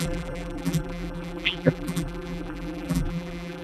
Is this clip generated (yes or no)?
yes